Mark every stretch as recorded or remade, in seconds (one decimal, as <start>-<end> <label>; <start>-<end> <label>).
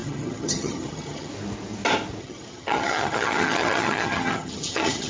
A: 0.0-1.3 remade; 1.3-2.2 recorded; 2.2-5.1 remade